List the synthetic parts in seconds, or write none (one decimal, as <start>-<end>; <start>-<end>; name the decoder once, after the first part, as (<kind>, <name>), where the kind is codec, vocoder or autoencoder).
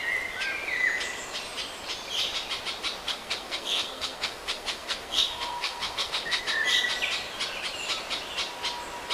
3.0-6.4 (codec, SNAC)